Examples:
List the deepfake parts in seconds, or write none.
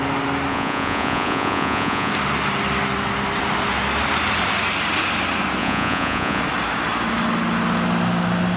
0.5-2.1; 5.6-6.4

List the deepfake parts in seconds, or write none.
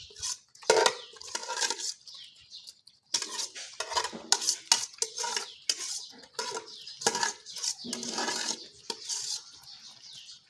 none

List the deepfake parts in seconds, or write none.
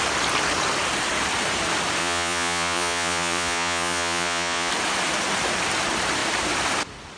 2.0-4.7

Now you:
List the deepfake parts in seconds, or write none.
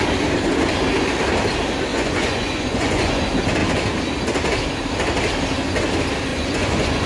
1.9-3.2; 6.3-7.1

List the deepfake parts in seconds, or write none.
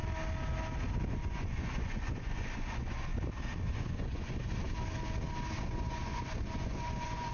1.1-3.1; 3.7-4.5; 5.6-7.3